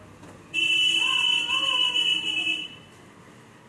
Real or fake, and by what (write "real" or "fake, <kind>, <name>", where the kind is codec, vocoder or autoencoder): real